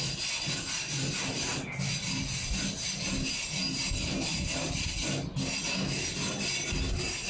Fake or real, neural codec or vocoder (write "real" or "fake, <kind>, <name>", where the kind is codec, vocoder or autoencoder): real